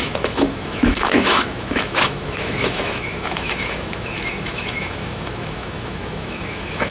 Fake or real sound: fake